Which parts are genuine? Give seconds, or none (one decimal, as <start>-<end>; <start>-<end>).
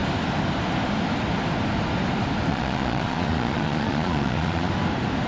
0.0-2.5; 4.7-5.3